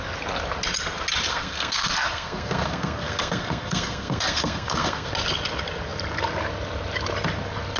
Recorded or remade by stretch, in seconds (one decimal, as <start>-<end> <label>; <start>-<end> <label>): 0.0-1.3 recorded; 1.3-5.1 remade; 5.1-7.8 recorded